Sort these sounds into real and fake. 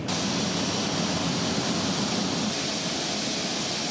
real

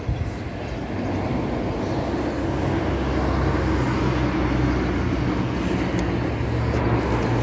real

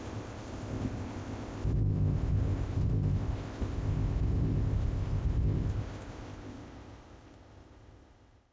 fake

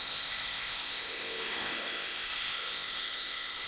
fake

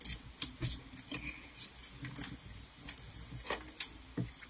real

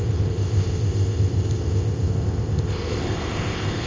fake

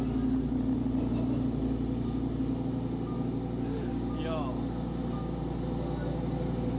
real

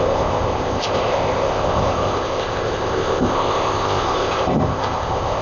fake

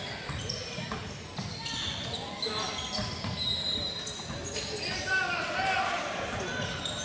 real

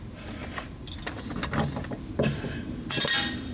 real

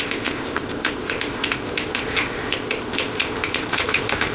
fake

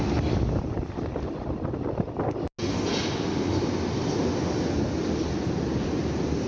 real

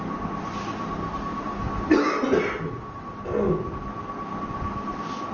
real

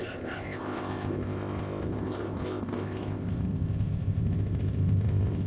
fake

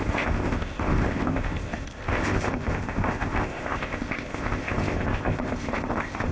fake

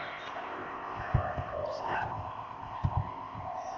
fake